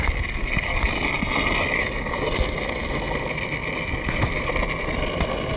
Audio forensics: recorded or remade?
recorded